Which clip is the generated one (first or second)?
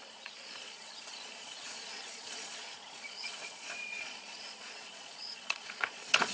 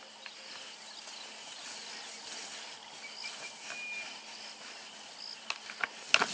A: first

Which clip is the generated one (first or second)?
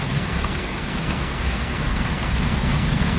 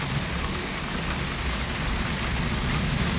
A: first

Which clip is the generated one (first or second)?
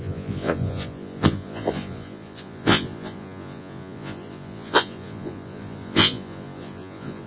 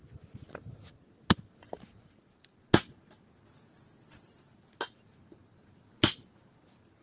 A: first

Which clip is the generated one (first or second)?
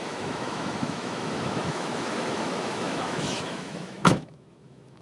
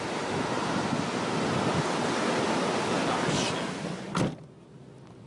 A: first